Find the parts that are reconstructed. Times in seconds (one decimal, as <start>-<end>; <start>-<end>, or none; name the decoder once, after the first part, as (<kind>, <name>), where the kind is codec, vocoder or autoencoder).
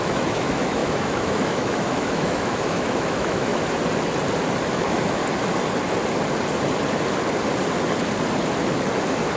0.0-3.5 (autoencoder, DAC-VAE); 4.7-5.2